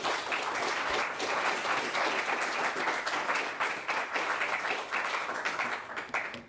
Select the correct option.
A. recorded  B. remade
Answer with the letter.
A